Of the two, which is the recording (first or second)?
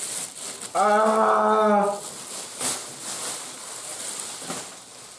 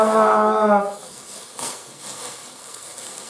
first